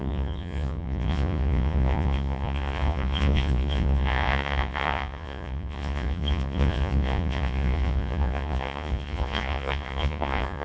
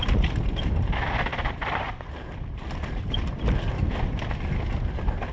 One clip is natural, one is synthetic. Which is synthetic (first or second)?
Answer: first